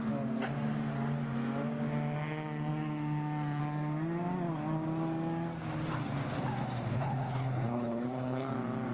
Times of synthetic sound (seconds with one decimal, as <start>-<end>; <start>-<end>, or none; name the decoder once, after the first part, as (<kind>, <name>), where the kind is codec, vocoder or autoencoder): 6.9-8.5 (codec, HILCodec)